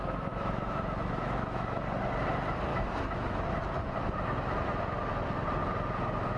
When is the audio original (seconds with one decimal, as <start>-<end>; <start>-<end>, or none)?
1.8-2.7; 3.4-6.4